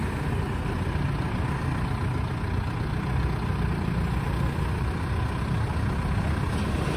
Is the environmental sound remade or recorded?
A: recorded